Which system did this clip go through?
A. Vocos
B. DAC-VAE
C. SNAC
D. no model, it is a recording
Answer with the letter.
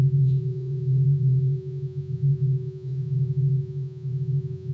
A